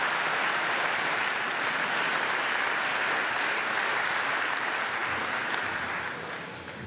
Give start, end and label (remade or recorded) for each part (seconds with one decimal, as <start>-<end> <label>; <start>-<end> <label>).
0.0-6.9 recorded